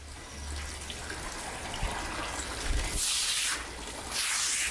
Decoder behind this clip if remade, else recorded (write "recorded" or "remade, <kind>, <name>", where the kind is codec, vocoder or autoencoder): recorded